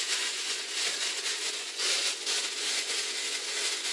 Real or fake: fake